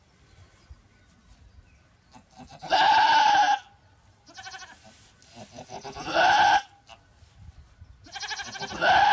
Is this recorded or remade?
recorded